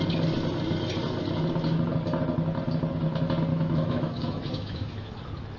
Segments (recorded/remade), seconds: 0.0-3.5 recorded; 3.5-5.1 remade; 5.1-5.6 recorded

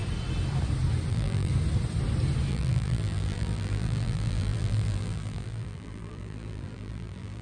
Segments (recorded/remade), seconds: 0.0-1.1 recorded; 1.1-1.5 remade; 1.5-2.5 recorded; 2.5-7.4 remade

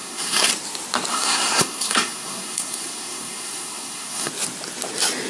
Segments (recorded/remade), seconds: 0.0-0.5 remade; 0.5-1.1 recorded; 1.1-4.3 remade; 4.3-5.3 recorded

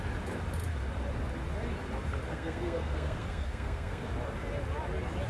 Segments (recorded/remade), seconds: 0.0-2.3 recorded; 2.3-4.1 remade; 4.1-5.3 recorded

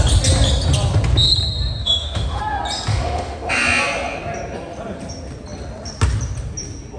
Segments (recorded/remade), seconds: 0.0-1.8 recorded; 1.8-2.4 remade; 2.4-2.9 recorded; 2.9-3.5 remade; 3.5-7.0 recorded

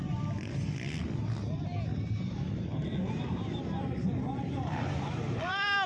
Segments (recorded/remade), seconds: 0.0-0.5 remade; 0.5-2.7 recorded; 2.7-5.9 remade

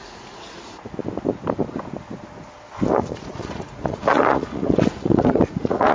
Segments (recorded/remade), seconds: 0.0-1.0 remade; 1.0-2.9 recorded; 2.9-5.9 remade

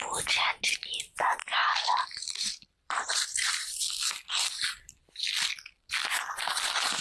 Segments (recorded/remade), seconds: 0.0-1.6 recorded; 1.6-5.5 remade; 5.5-7.0 recorded